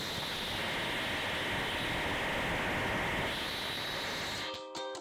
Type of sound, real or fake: real